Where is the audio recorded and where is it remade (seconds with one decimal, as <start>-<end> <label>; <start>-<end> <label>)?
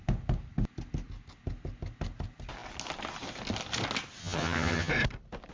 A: 0.0-4.2 recorded; 4.2-4.9 remade; 4.9-5.5 recorded